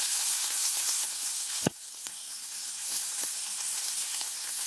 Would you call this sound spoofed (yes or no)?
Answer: yes